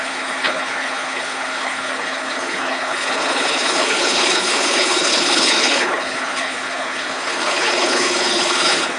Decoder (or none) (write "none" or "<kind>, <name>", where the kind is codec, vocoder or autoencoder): codec, HILCodec